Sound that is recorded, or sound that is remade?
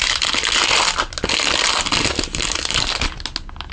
recorded